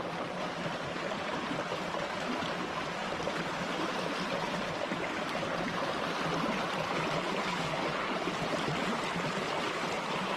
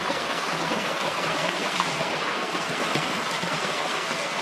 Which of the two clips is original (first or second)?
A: first